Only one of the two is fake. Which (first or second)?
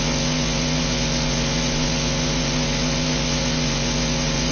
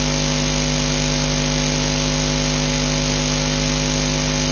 first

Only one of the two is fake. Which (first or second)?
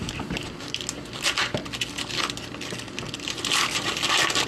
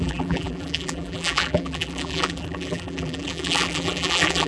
second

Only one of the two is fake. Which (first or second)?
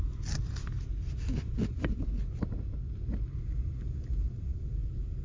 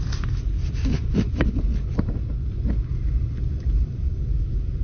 second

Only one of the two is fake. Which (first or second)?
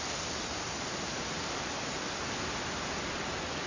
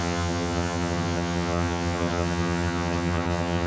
second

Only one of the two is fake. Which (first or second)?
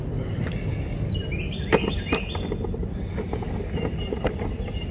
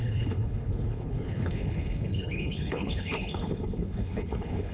second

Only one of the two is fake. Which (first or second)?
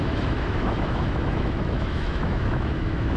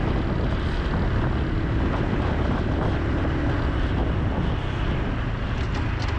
first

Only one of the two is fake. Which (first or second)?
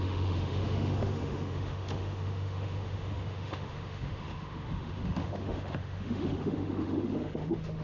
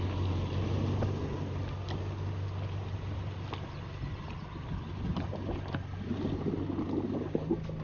first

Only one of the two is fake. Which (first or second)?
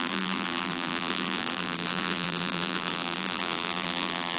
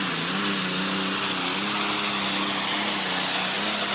first